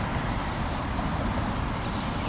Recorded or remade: recorded